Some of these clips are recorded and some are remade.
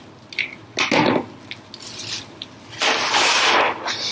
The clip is recorded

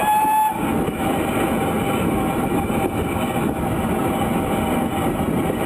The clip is recorded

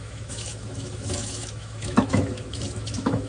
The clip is remade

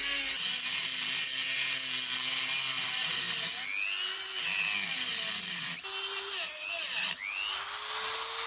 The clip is recorded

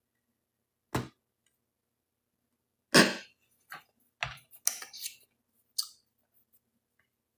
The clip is recorded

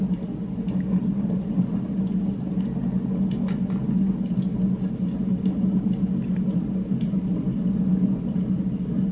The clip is recorded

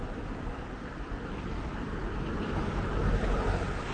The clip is recorded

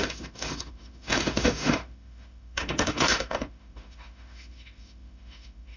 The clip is remade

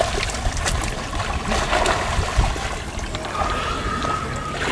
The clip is recorded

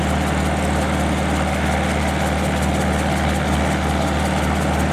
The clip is recorded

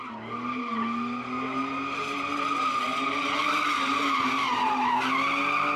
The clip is recorded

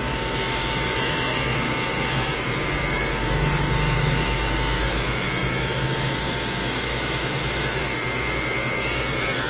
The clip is remade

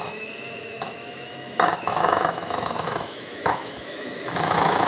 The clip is remade